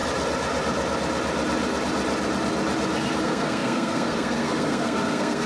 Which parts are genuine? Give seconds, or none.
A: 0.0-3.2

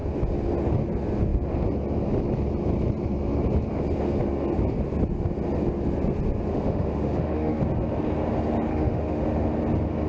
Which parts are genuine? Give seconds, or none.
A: 0.0-6.5; 7.6-8.7; 9.2-10.1

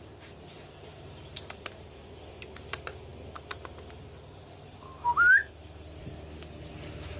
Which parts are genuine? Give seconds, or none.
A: 0.0-7.2

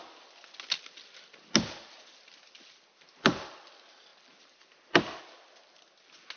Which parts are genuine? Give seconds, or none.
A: 0.0-4.1; 5.2-6.4

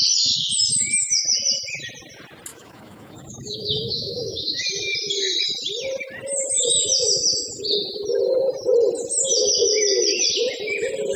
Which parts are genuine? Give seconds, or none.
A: 0.0-2.5; 4.6-11.2

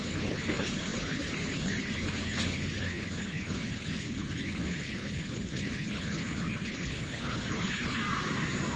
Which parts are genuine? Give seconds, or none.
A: 8.0-8.8

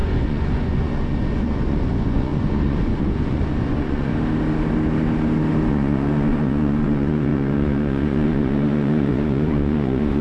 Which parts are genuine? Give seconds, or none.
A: 4.1-5.7

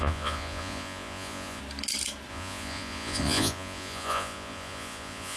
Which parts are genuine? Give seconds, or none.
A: 1.6-2.3